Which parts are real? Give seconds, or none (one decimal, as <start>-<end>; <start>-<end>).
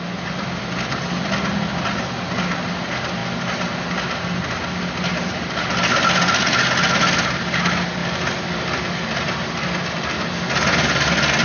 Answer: 0.0-8.0; 8.9-11.4